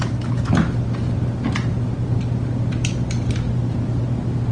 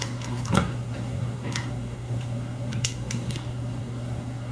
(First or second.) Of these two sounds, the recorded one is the first